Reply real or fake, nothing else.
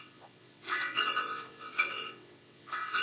fake